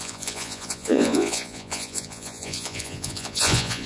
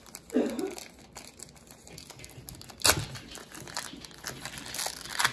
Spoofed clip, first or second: first